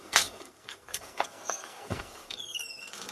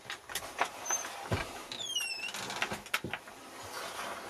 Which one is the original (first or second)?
second